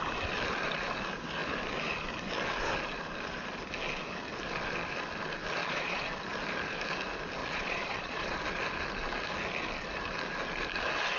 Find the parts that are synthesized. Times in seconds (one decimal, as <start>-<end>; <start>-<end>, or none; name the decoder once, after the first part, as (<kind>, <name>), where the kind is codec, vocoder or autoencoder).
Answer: 5.6-6.1 (vocoder, Vocos); 7.4-8.4

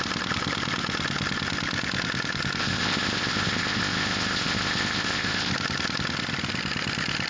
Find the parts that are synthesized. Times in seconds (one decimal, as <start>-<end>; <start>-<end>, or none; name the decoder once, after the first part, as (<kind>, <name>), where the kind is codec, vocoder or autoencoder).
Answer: 2.6-5.5 (codec, ZipCodec)

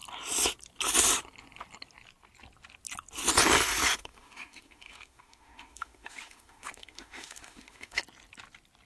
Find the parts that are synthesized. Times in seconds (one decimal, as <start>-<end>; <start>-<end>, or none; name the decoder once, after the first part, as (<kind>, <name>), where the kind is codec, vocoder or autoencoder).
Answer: 4.0-8.0 (autoencoder, DAC-VAE)

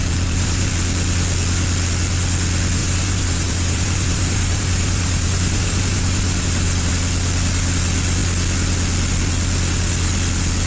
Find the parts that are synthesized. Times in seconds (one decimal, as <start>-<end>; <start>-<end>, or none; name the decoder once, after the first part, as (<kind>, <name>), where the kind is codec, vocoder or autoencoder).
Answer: 0.0-0.7 (vocoder, BigVGAN v2); 2.8-6.9

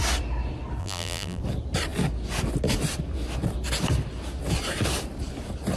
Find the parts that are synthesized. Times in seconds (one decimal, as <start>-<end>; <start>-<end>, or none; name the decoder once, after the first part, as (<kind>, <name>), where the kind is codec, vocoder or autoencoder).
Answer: 0.8-1.4 (vocoder, BigVGAN v2)